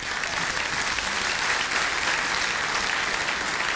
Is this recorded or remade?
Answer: recorded